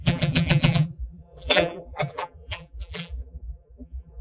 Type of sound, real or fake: fake